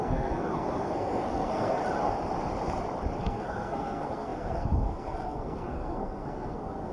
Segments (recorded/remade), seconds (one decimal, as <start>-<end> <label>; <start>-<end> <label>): 0.0-1.8 remade; 1.8-3.2 recorded; 3.2-6.9 remade